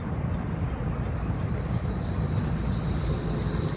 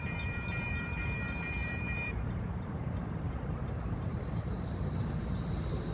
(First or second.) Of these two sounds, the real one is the first